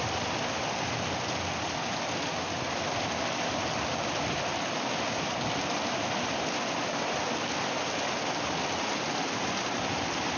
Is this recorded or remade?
recorded